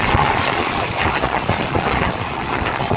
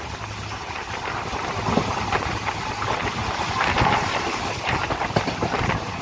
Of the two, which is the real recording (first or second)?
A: second